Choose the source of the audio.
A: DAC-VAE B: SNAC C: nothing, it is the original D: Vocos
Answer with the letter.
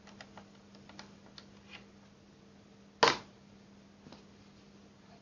C